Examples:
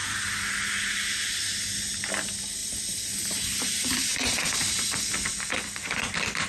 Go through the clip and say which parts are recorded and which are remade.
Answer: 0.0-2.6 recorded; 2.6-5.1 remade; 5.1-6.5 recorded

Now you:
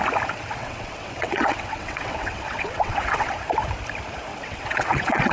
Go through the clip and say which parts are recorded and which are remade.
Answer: 0.0-0.6 recorded; 0.6-3.3 remade; 3.3-4.3 recorded; 4.3-5.3 remade

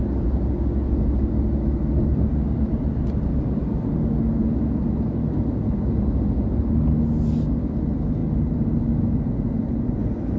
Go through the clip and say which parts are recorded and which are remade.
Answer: 0.0-10.4 recorded

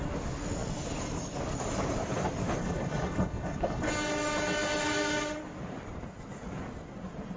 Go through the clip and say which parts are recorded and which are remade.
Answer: 0.0-2.6 recorded; 2.6-3.9 remade; 3.9-7.4 recorded

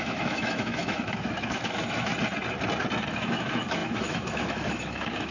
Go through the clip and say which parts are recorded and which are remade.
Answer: 0.0-2.1 remade; 2.1-3.1 recorded; 3.1-5.3 remade